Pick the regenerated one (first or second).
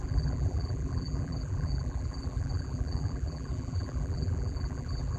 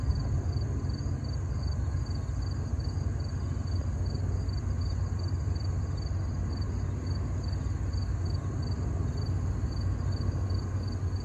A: first